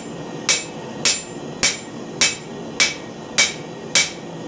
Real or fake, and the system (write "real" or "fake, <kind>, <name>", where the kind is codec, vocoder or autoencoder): real